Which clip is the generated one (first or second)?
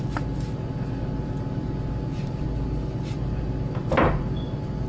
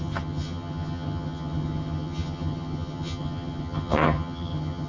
second